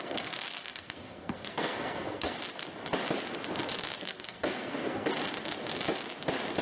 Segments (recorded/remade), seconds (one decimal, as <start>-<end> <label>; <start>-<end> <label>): 0.0-2.4 remade; 2.4-4.0 recorded; 4.0-5.2 remade; 5.2-6.6 recorded